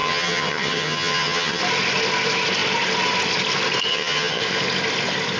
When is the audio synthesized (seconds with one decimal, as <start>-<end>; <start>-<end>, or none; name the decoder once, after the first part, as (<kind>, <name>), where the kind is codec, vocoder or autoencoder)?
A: 0.0-1.6 (vocoder, HiFi-GAN); 3.9-4.4